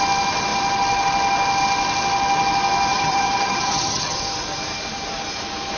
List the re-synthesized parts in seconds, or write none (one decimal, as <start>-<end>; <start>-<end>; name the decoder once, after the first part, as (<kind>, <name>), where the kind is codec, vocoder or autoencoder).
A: 2.9-4.2 (vocoder, HiFi-GAN)